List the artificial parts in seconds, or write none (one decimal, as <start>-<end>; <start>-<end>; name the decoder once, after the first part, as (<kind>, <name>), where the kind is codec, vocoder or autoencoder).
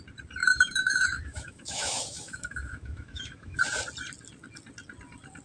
0.4-3.6 (autoencoder, DAC-VAE)